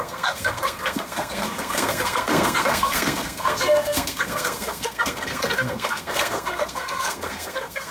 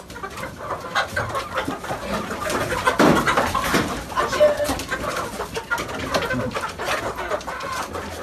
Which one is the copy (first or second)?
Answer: first